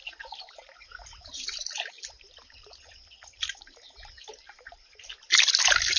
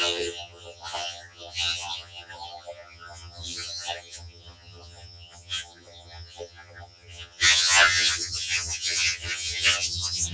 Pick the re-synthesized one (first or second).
second